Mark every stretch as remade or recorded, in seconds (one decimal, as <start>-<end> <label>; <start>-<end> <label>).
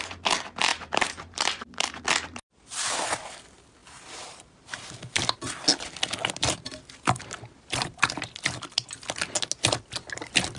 0.0-0.7 recorded; 0.7-2.0 remade; 2.0-3.8 recorded; 3.8-4.9 remade; 4.9-10.6 recorded